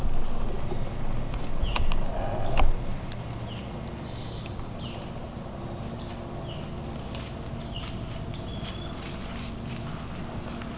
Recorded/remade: recorded